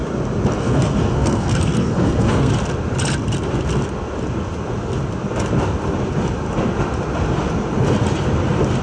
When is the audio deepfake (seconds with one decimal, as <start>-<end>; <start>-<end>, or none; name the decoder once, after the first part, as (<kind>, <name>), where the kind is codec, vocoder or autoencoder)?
0.6-2.5 (codec, SNAC)